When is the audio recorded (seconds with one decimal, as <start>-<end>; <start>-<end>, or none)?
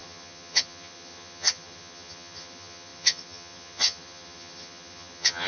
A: none